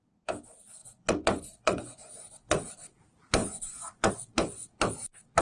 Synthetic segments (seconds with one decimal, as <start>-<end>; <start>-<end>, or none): 0.8-2.7; 3.4-4.1